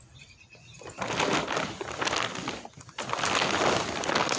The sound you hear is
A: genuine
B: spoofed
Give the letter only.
A